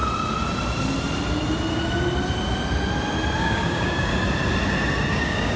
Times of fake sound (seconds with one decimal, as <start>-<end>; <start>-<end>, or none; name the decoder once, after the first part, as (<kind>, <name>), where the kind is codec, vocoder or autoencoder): 3.4-4.1 (codec, DAC); 5.1-5.6